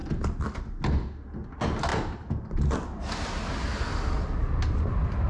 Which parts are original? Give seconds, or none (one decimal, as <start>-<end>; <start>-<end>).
0.0-5.3